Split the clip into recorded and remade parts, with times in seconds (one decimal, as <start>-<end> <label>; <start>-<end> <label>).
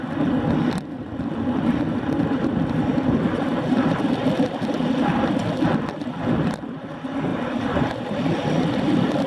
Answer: 0.0-9.3 recorded